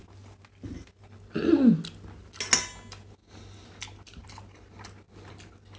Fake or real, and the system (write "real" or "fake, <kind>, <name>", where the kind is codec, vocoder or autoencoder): real